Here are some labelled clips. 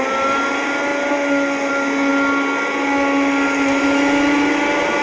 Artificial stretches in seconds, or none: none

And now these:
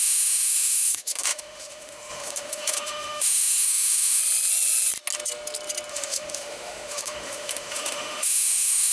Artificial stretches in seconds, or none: 0.0-4.2 (autoencoder, DAC-VAE); 5.9-8.9

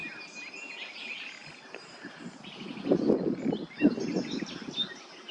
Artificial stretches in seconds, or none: none

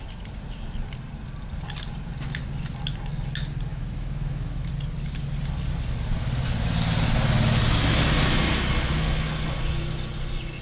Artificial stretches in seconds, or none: 3.7-4.7 (autoencoder, DAC-VAE)